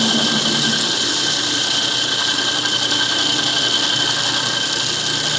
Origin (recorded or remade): recorded